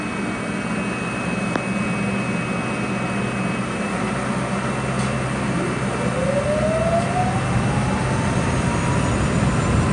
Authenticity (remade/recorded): recorded